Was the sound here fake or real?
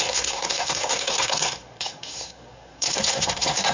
fake